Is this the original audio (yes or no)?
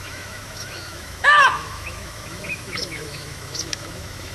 no